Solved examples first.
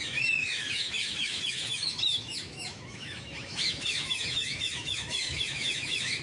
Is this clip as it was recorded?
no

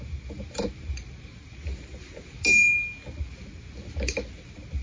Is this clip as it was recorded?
yes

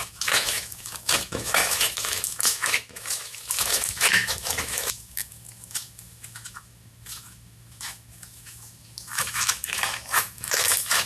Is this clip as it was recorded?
no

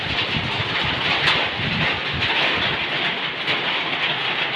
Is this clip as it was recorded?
yes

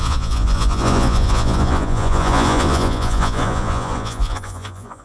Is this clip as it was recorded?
no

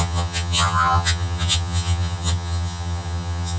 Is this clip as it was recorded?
no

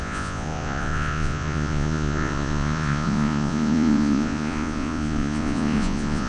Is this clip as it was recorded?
no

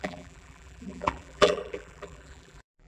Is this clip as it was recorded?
no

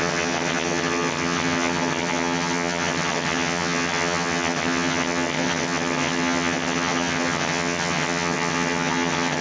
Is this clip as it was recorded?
no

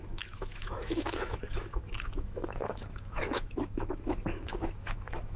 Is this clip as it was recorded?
no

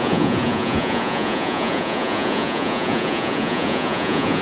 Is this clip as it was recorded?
no